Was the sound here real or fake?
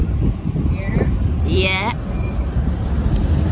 real